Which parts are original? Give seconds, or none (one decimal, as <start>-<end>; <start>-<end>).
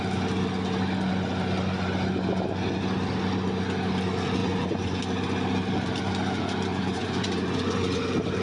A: 0.0-4.4; 5.0-6.7; 8.0-8.4